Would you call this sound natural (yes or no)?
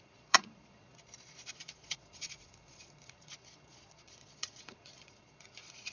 no